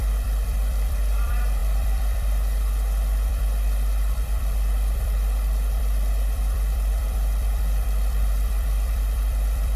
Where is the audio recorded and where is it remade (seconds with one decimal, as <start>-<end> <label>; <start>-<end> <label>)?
0.0-9.8 remade